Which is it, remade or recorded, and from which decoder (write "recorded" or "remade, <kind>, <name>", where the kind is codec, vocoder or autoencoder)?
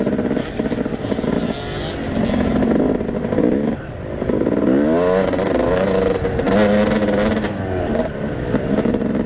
recorded